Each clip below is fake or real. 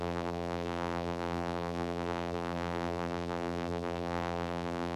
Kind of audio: fake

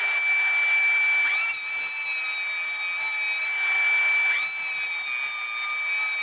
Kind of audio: real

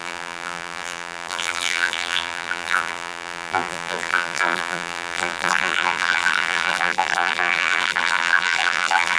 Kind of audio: fake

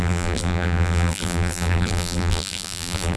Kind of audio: fake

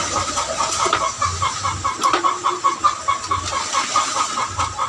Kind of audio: fake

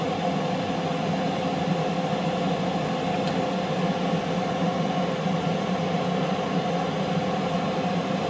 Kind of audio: real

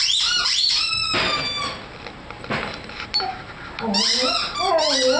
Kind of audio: real